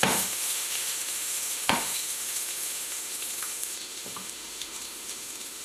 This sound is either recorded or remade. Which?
remade